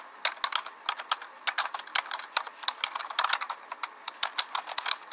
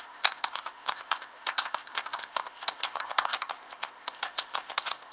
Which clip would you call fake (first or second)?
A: second